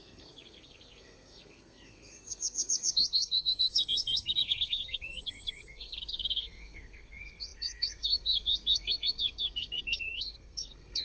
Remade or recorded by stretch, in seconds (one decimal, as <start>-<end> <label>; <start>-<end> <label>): 0.0-11.0 remade